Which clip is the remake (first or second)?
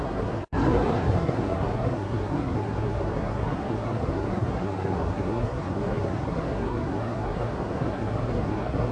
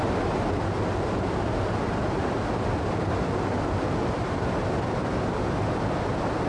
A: first